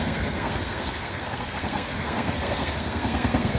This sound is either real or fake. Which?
fake